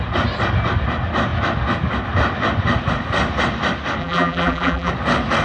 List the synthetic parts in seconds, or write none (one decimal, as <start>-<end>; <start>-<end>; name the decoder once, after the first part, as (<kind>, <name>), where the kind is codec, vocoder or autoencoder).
4.0-4.9 (vocoder, BigVGAN v2)